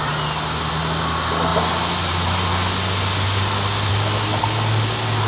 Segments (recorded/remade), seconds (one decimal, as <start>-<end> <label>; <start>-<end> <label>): 0.0-5.3 recorded